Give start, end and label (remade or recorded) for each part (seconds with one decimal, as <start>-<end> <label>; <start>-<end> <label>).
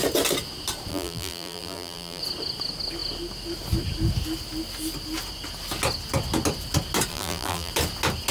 0.0-0.9 recorded; 0.9-2.2 remade; 2.2-7.1 recorded; 7.1-7.7 remade; 7.7-8.3 recorded